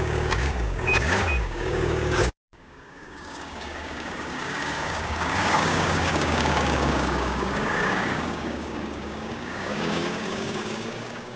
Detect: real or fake fake